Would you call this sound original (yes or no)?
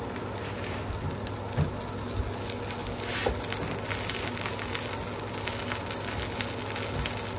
yes